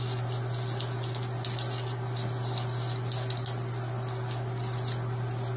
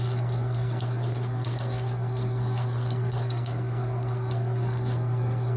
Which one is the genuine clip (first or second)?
first